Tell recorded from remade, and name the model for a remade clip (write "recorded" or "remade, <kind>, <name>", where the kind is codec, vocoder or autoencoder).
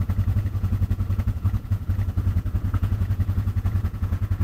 remade, vocoder, Vocos